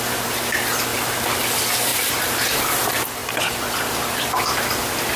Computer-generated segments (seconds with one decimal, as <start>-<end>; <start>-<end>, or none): 0.9-1.4; 1.9-2.8